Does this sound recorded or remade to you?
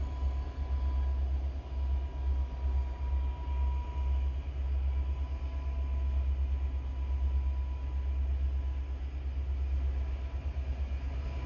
recorded